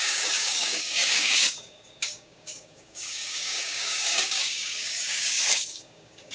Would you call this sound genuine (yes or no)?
no